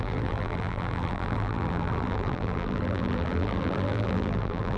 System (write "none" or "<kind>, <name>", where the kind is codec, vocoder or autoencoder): vocoder, BigVGAN v2